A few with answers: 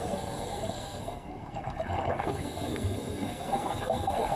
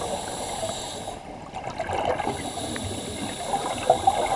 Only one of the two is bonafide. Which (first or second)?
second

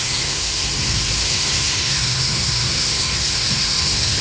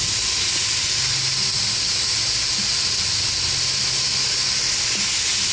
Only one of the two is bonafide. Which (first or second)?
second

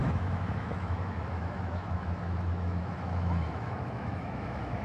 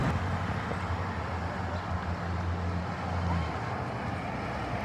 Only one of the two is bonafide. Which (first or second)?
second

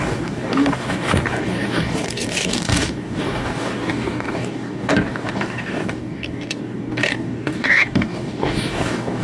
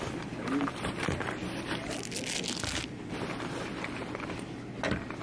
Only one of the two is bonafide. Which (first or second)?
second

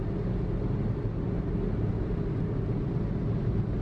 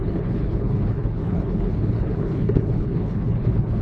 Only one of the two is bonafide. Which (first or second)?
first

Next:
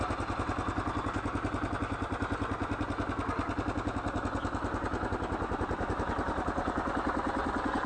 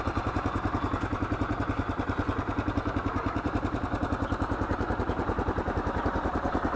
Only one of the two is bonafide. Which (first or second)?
first